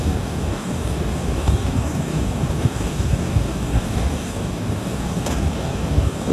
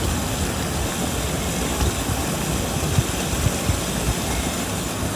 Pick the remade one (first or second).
first